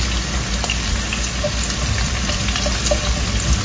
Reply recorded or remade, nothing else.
recorded